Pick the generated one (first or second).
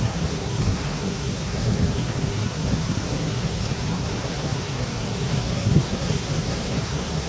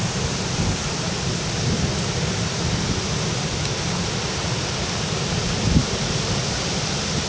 first